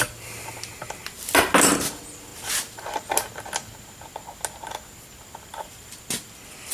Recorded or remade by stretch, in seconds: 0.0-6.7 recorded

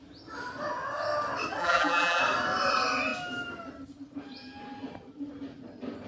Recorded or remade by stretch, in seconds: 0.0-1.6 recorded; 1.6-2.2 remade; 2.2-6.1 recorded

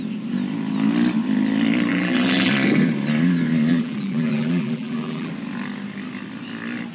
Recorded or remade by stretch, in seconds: 0.0-1.9 recorded; 1.9-2.5 remade; 2.5-3.7 recorded; 3.7-5.3 remade; 5.3-6.9 recorded

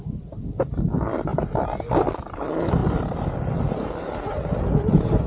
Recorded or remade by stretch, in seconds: 0.0-5.3 recorded

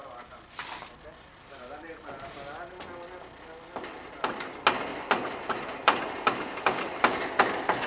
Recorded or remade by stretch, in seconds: 0.0-4.9 recorded; 4.9-7.1 remade; 7.1-7.9 recorded

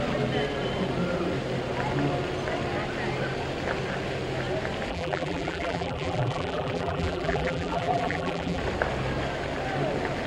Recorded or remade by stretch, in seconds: 0.0-4.9 recorded; 4.9-8.6 remade; 8.6-10.3 recorded